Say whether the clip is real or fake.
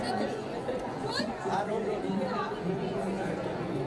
fake